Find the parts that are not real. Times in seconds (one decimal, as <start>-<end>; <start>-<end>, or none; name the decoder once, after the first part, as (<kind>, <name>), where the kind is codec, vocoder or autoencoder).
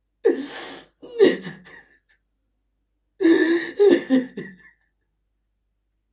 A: none